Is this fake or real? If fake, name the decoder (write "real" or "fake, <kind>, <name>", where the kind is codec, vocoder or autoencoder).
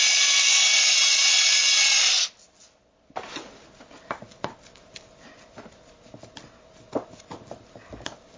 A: real